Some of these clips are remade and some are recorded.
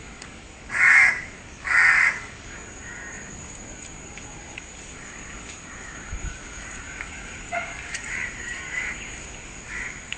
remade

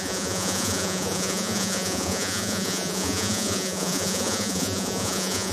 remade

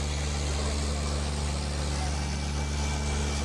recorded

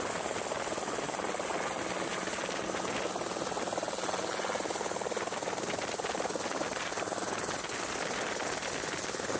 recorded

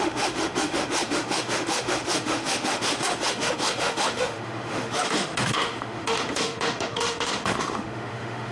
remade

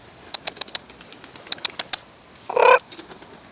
recorded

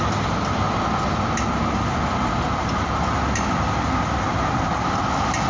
recorded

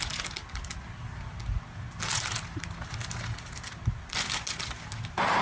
recorded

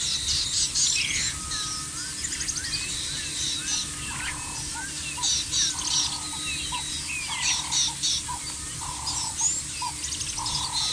recorded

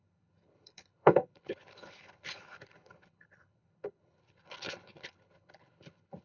remade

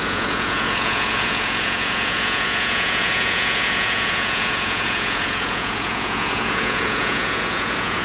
remade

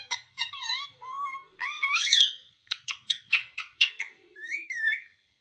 remade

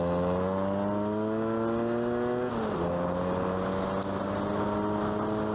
recorded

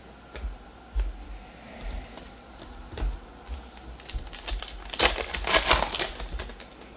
recorded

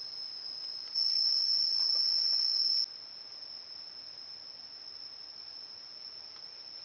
recorded